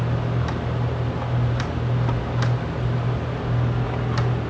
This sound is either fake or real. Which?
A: real